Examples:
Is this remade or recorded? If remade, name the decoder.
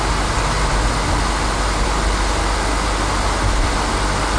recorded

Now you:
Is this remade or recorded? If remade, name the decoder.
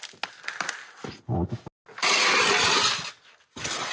recorded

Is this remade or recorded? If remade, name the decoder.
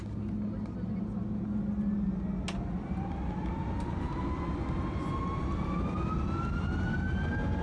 recorded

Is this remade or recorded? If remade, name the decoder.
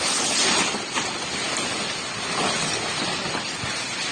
recorded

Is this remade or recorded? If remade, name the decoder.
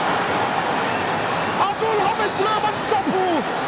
recorded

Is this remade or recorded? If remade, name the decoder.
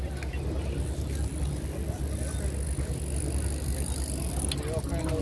recorded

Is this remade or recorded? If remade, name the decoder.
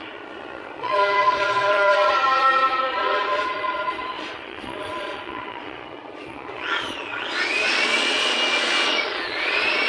remade, vocoder, Vocos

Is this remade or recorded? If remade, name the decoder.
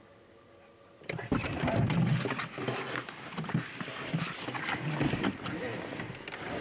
recorded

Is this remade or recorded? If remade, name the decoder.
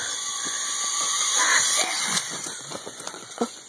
remade, vocoder, Vocos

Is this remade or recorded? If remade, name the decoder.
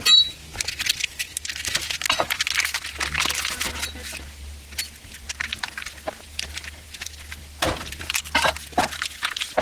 recorded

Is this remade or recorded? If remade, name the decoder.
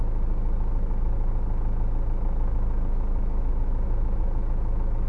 recorded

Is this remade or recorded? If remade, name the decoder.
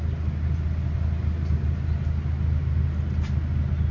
recorded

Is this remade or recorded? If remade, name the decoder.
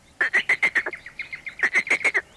recorded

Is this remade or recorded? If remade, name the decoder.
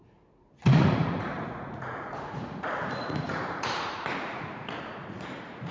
remade, vocoder, Vocos